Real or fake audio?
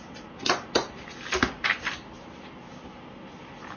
real